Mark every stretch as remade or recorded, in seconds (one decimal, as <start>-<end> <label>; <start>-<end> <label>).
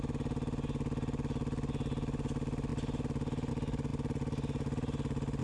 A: 0.0-5.4 recorded